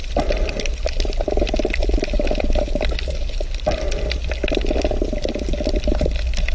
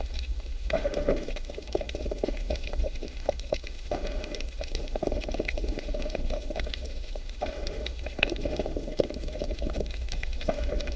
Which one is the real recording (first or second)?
first